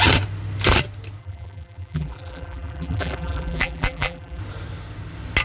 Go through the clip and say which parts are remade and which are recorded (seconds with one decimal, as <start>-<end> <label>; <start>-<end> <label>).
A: 0.0-1.2 recorded; 1.2-4.4 remade; 4.4-5.4 recorded